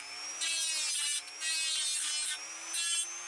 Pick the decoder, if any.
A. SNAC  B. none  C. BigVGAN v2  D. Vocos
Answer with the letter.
B